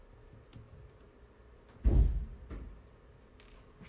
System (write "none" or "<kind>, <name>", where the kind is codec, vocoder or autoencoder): none